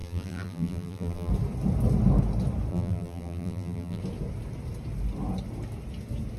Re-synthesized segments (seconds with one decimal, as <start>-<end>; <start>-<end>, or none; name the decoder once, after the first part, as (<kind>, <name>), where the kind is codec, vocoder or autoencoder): 0.0-1.3 (vocoder, BigVGAN v2); 2.7-4.0